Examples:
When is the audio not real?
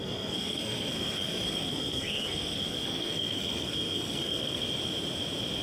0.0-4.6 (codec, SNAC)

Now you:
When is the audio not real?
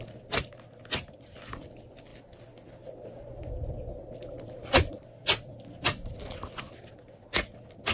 none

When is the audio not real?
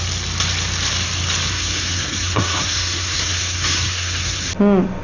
1.5-4.5 (codec, SNAC)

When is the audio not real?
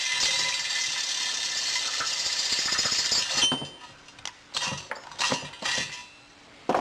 none